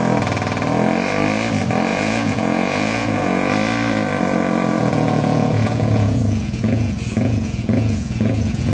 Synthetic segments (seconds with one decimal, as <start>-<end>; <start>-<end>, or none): 1.9-3.5; 4.8-8.7